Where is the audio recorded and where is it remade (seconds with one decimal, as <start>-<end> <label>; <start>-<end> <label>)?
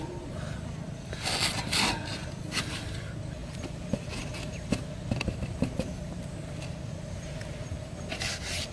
0.0-8.7 recorded